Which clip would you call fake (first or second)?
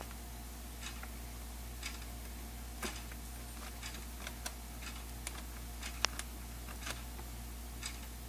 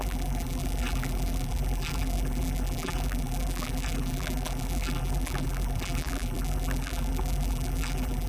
second